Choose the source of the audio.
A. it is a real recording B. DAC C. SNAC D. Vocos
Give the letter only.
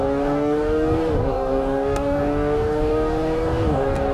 B